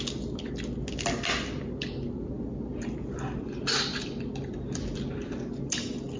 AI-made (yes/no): no